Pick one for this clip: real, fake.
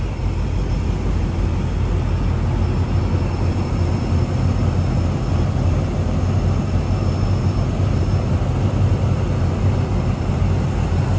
real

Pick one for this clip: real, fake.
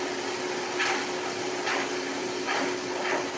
real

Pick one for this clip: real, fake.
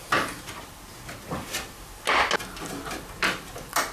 real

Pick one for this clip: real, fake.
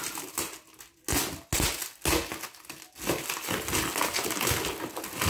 real